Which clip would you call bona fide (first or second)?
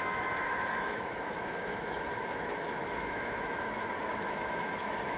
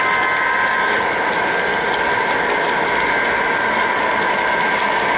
second